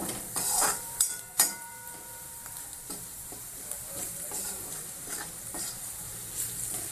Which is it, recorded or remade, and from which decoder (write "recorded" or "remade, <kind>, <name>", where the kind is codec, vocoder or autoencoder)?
remade, vocoder, BigVGAN v2